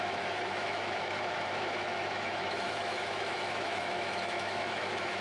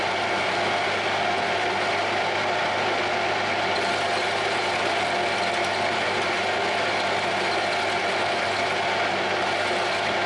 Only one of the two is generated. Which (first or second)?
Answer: first